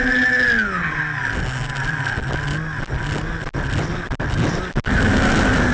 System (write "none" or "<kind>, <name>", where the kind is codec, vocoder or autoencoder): none